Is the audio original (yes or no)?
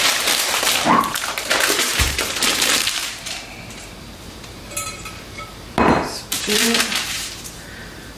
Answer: no